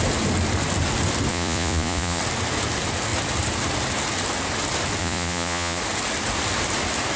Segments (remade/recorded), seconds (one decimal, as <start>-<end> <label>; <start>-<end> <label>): 0.0-1.3 recorded; 1.3-2.2 remade; 2.2-5.0 recorded; 5.0-5.8 remade; 5.8-7.2 recorded